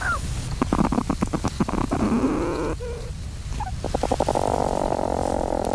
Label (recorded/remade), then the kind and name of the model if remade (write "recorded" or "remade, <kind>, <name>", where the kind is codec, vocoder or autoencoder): recorded